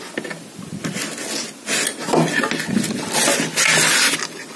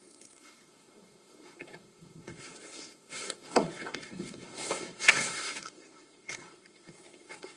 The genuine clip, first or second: first